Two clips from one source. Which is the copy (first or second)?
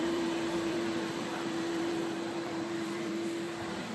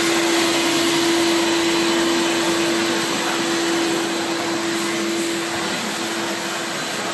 first